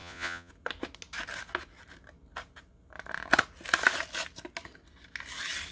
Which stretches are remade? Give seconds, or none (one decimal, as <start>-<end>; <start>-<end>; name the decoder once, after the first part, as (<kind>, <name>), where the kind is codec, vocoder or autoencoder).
0.0-0.5 (vocoder, Vocos)